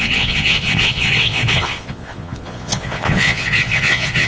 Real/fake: fake